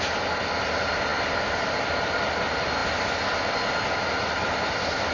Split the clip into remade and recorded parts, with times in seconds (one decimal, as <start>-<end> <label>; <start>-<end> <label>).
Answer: 0.0-5.1 recorded